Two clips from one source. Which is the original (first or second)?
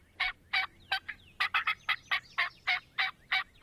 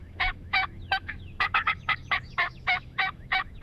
first